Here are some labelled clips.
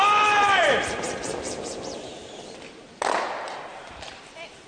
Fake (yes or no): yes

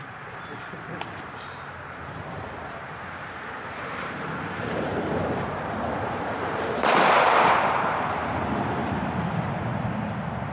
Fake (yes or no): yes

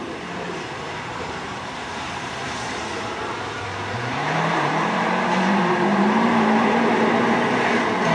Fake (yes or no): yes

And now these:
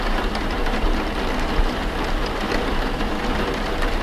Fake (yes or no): no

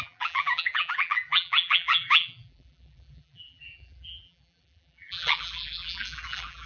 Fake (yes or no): yes